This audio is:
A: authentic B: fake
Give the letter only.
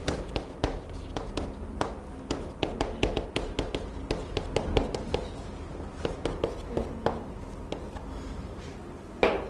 A